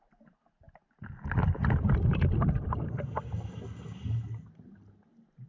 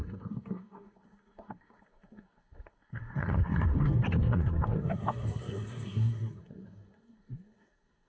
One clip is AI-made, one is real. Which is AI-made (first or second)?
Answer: second